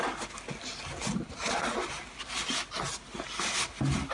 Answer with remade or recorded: recorded